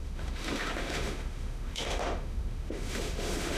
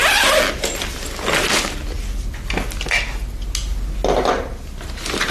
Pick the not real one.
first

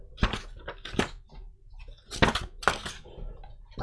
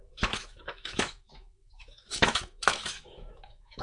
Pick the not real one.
second